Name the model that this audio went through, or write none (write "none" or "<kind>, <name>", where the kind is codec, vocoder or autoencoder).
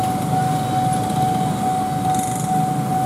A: none